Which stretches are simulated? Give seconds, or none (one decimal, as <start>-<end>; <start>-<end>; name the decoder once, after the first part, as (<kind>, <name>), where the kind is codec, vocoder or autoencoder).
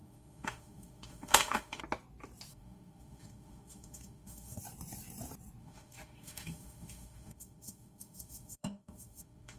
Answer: 0.0-1.8 (autoencoder, DAC-VAE); 2.5-4.6; 5.6-9.6